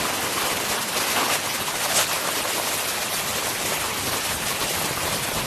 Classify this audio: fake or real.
real